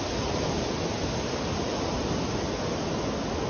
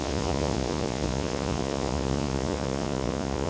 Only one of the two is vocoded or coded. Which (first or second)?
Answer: second